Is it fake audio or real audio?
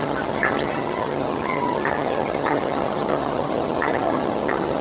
fake